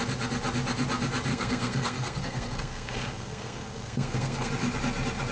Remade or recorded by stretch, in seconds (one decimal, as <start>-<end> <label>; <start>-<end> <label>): 0.0-1.3 recorded; 1.3-4.5 remade; 4.5-5.3 recorded